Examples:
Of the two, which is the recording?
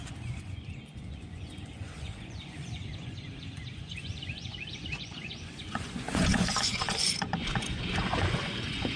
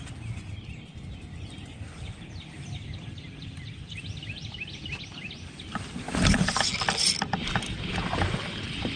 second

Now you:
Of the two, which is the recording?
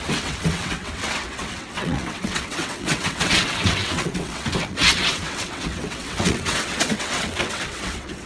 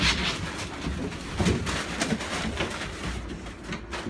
second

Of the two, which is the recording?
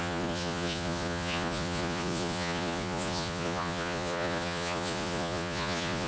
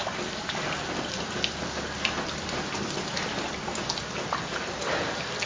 second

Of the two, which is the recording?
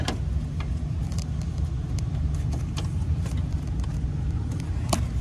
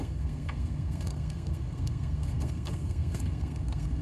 first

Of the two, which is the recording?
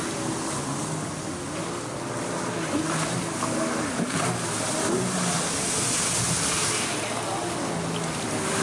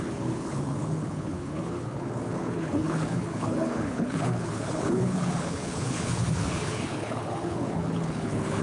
first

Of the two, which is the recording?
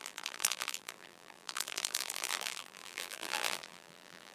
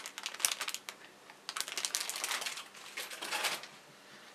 second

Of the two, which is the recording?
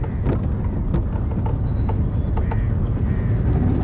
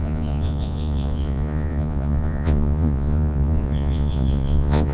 first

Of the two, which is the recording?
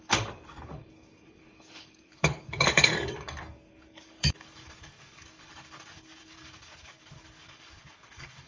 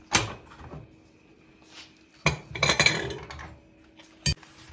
second